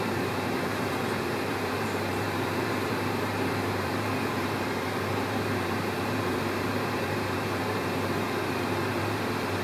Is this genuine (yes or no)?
no